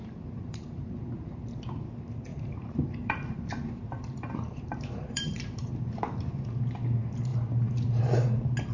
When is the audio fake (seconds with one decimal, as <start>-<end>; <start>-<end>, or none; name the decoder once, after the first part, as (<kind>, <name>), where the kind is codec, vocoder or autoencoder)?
0.0-0.9 (vocoder, BigVGAN v2); 2.3-5.7; 7.3-8.0